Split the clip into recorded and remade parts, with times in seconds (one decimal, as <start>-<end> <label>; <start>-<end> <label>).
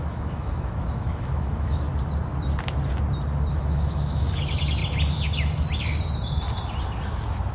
0.0-1.9 remade; 1.9-3.5 recorded; 3.5-4.8 remade; 4.8-7.5 recorded